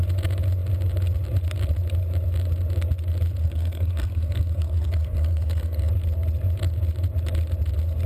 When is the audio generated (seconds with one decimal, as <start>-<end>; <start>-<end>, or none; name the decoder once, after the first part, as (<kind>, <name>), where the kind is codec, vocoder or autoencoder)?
3.4-5.9 (codec, SNAC)